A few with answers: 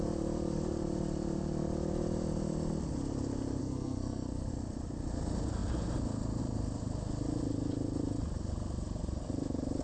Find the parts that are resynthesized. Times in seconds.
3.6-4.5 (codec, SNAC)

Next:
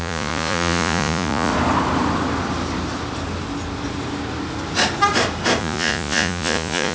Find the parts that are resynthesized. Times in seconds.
0.0-1.5 (vocoder, Vocos); 5.6-6.9